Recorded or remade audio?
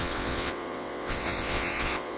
remade